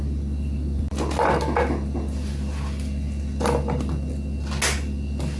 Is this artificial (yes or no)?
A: no